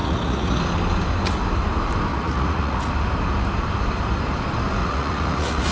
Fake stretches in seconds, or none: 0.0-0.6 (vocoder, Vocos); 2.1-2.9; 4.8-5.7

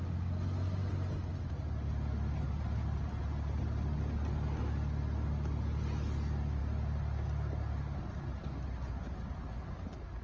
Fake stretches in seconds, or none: none

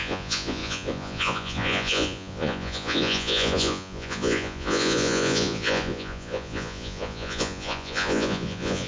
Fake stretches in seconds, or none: 0.0-8.9 (vocoder, Vocos)

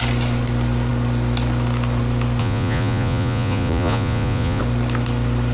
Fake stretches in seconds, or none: 2.4-4.6 (vocoder, Vocos)

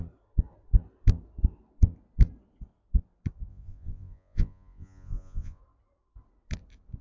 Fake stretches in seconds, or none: 3.5-5.6 (vocoder, Vocos)

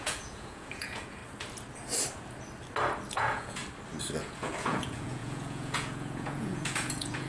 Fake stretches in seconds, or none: 0.0-1.2 (vocoder, Vocos); 3.1-3.6; 4.2-7.3

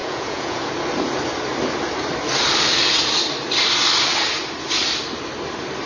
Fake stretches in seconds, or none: 0.0-0.7 (vocoder, Vocos)

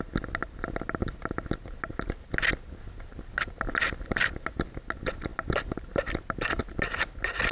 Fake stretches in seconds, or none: none